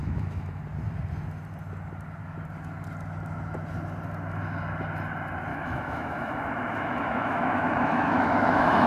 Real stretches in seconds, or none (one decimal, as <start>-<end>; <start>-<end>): 0.6-5.5